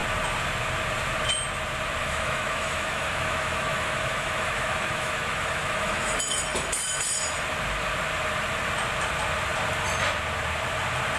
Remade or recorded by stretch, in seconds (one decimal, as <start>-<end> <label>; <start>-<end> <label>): 0.0-2.0 recorded; 2.0-6.1 remade; 6.1-11.2 recorded